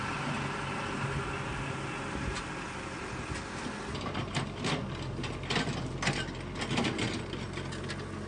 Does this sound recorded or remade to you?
recorded